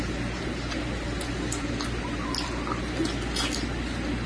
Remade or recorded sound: recorded